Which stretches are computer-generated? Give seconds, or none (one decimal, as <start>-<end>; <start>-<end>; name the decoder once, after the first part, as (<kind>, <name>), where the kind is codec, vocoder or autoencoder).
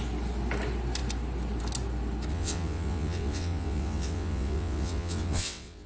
2.3-5.9 (vocoder, WaveNeXt)